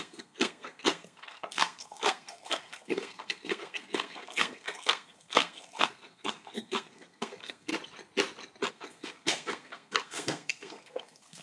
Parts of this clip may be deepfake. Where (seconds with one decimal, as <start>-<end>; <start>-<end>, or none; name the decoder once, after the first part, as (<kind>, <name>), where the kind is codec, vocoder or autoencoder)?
0.0-7.7 (codec, SNAC); 8.7-11.4